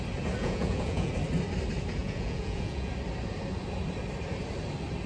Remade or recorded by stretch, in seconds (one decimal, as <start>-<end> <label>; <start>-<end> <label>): 0.0-0.4 recorded; 0.4-1.1 remade; 1.1-2.0 recorded; 2.0-2.9 remade; 2.9-5.1 recorded